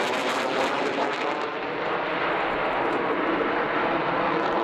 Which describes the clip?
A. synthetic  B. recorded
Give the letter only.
B